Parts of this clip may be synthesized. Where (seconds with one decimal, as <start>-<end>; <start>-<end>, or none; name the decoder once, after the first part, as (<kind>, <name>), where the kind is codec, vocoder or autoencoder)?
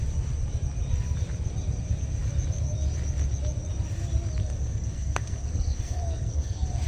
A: 4.4-6.9 (codec, SNAC)